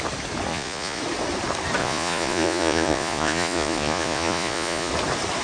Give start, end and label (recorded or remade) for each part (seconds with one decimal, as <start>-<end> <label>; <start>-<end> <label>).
0.0-0.5 recorded; 0.5-1.0 remade; 1.0-1.8 recorded; 1.8-4.9 remade; 4.9-5.4 recorded

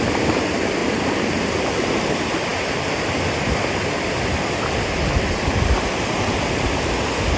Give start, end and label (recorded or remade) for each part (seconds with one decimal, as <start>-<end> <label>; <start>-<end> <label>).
0.0-0.8 recorded; 0.8-1.6 remade; 1.6-2.5 recorded; 2.5-5.0 remade; 5.0-7.4 recorded

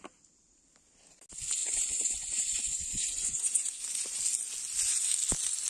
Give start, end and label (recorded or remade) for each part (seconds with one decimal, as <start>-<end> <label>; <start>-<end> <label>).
0.0-1.6 recorded; 1.6-4.2 remade; 4.2-5.7 recorded

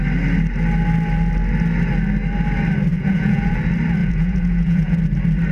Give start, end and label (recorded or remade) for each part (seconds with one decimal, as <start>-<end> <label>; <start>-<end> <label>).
0.0-2.9 recorded; 2.9-3.6 remade; 3.6-4.0 recorded; 4.0-5.0 remade; 5.0-5.5 recorded

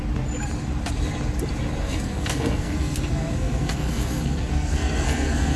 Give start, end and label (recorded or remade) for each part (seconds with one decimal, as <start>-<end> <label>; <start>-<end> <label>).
0.0-1.8 recorded; 1.8-5.6 remade

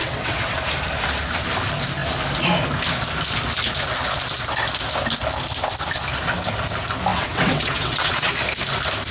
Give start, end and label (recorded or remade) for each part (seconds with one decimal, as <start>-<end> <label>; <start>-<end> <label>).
0.0-0.6 remade; 0.6-7.1 recorded; 7.1-8.3 remade; 8.3-9.1 recorded

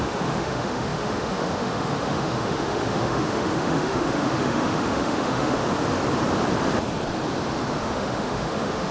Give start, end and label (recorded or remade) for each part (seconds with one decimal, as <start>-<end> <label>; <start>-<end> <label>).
0.0-5.6 remade; 5.6-7.8 recorded; 7.8-8.9 remade

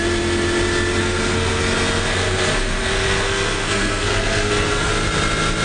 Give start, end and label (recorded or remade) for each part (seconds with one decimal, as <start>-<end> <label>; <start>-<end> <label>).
0.0-1.0 recorded; 1.0-1.6 remade; 1.6-2.1 recorded; 2.1-4.9 remade; 4.9-5.6 recorded